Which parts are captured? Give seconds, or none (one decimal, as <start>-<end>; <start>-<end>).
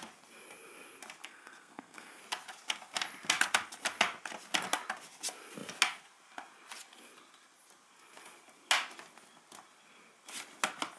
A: 0.0-1.2; 2.2-11.0